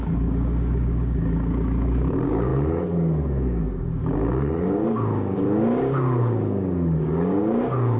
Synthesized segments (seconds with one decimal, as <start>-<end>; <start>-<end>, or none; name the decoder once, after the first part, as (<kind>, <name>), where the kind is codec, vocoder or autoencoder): 0.0-8.0 (codec, DAC)